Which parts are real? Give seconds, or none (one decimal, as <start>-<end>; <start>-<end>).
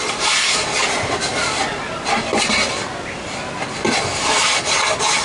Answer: 0.0-5.2